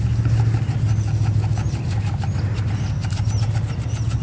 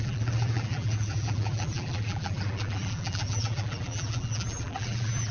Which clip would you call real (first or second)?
first